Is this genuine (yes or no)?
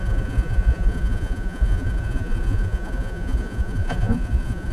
no